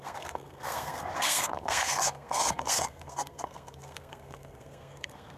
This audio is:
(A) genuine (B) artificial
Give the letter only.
B